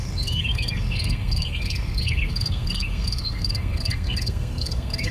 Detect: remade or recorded remade